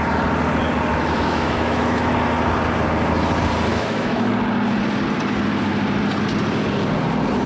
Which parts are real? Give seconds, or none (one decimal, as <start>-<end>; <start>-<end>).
0.0-0.9; 2.1-3.7; 4.3-7.5